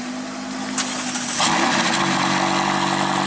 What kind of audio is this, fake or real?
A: real